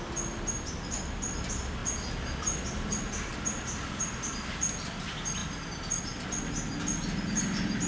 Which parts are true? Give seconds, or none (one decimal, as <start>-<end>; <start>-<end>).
0.0-7.9

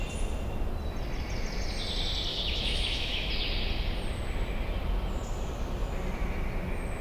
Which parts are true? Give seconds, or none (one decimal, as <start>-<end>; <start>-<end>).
0.0-2.3; 3.3-7.0

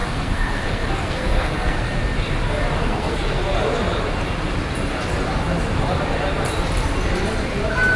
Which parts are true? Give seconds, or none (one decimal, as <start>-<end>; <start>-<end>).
2.0-2.8; 3.4-8.0